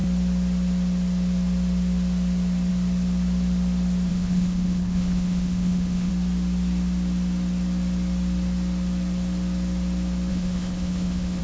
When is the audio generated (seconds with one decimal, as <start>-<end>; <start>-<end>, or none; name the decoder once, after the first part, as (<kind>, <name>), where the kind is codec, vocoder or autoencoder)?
4.1-6.1 (codec, HILCodec); 10.3-11.4